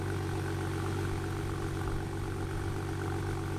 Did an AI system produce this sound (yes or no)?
no